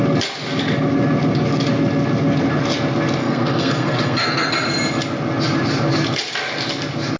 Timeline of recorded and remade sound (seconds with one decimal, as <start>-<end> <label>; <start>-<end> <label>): 0.0-3.2 recorded; 3.2-4.5 remade; 4.5-7.2 recorded